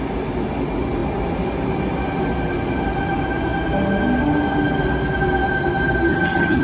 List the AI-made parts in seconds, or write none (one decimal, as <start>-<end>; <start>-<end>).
6.1-6.6